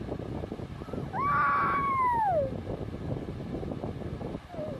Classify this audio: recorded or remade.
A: recorded